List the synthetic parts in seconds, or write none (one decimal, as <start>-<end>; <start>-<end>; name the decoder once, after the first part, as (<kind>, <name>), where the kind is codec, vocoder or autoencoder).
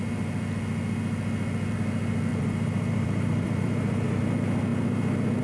2.3-4.2 (vocoder, BigVGAN v2)